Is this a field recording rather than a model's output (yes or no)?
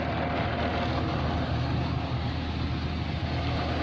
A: yes